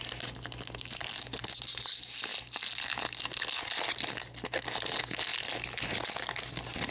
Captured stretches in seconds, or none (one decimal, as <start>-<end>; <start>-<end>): 0.0-6.9